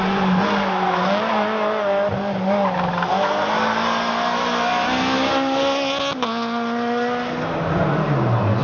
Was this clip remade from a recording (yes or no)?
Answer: no